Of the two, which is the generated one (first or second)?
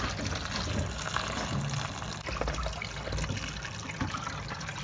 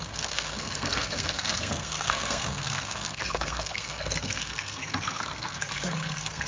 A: second